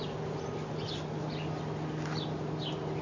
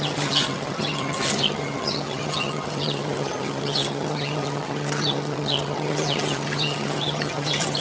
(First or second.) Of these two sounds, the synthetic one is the second